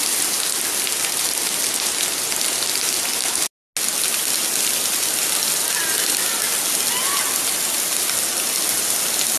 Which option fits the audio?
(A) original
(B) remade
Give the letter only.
A